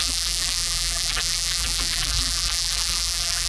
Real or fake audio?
fake